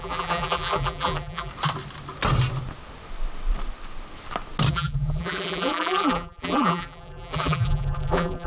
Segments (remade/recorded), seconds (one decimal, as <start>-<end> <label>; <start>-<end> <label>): 0.0-1.5 remade; 1.5-4.7 recorded; 4.7-8.5 remade